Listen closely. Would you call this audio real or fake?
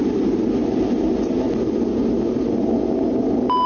real